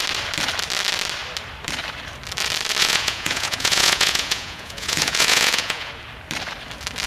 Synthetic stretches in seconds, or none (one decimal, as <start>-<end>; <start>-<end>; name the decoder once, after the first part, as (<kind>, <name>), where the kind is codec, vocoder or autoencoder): 2.8-5.9 (vocoder, Vocos)